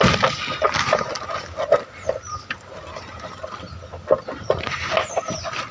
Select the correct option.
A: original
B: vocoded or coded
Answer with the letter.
A